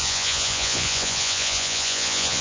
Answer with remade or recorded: remade